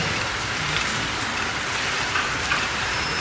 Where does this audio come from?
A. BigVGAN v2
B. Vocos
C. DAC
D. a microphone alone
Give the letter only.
A